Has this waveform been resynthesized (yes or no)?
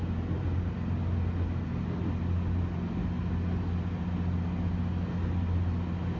no